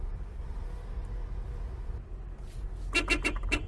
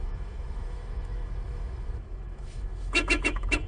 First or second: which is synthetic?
second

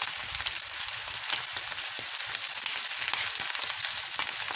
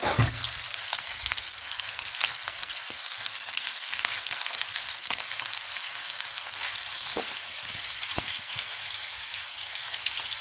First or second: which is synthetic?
second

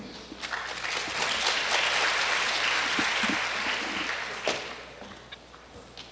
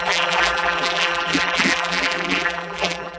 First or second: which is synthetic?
second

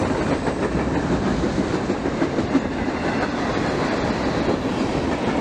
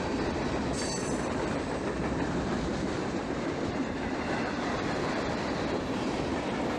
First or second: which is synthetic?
second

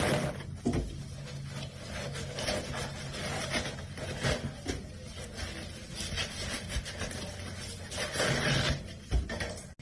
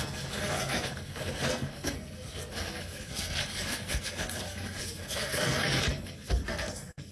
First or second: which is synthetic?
second